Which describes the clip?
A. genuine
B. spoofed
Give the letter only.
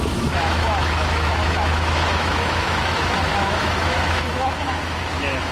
B